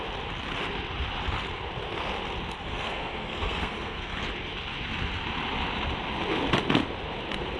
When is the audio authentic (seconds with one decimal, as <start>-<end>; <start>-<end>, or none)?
0.0-2.7; 4.2-7.6